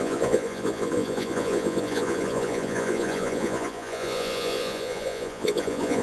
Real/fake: fake